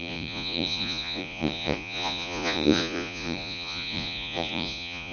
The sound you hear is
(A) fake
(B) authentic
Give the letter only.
A